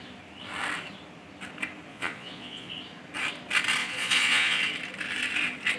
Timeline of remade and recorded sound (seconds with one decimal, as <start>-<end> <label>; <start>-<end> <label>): 0.0-1.9 recorded; 1.9-2.7 remade; 2.7-3.8 recorded; 3.8-4.6 remade; 4.6-5.8 recorded